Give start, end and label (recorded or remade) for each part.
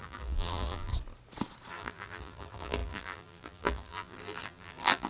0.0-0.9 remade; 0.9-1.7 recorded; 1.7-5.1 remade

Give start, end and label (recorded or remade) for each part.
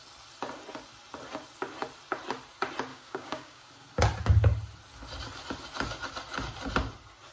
0.0-2.9 recorded; 2.9-3.7 remade; 3.7-7.3 recorded